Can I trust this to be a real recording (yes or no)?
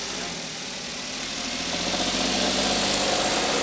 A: yes